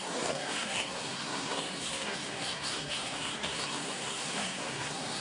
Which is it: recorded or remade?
remade